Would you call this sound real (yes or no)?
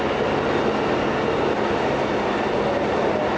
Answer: yes